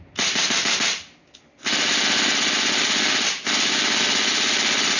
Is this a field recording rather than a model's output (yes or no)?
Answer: yes